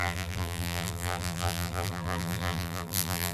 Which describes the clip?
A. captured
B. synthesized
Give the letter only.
B